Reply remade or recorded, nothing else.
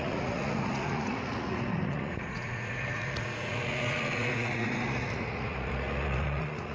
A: remade